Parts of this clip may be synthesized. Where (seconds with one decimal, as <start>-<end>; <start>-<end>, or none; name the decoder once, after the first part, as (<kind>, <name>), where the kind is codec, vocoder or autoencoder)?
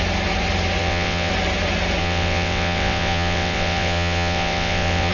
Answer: 0.8-1.3 (vocoder, WaveNeXt); 2.0-5.1